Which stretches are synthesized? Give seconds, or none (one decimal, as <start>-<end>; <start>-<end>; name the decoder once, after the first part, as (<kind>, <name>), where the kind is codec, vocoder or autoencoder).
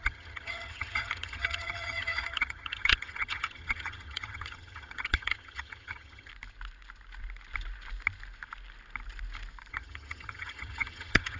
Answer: 0.0-6.3 (vocoder, HiFi-GAN); 9.7-11.4